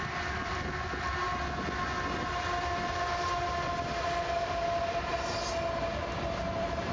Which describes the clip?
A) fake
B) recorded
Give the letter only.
B